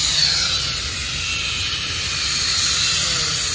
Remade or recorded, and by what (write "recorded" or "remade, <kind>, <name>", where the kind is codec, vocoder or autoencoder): recorded